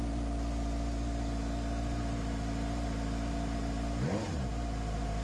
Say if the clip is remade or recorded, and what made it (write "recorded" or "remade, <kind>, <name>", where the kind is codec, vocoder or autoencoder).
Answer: recorded